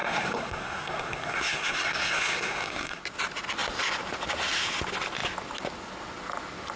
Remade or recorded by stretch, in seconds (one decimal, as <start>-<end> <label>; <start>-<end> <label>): 0.0-3.0 remade; 3.0-6.8 recorded